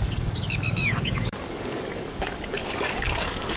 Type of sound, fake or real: fake